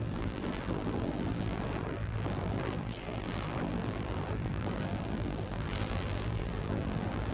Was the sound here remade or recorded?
remade